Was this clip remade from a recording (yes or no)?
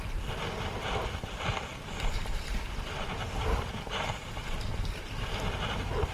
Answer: yes